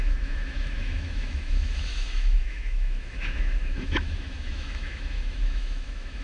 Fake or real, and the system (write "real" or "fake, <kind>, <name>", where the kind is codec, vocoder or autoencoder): fake, autoencoder, DAC-VAE